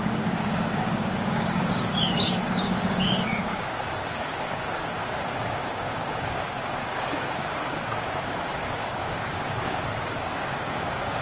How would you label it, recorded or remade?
remade